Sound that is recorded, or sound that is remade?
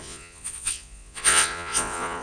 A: remade